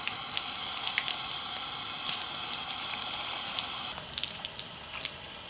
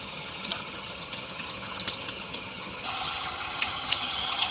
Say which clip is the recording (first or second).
first